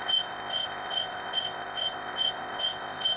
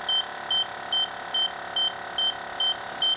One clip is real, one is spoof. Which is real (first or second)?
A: second